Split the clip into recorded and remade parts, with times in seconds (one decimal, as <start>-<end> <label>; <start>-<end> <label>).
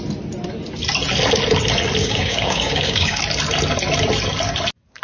0.0-2.0 recorded; 2.0-3.2 remade; 3.2-5.0 recorded